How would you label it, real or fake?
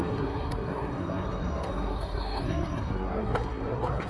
fake